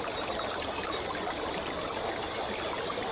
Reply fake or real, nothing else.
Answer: real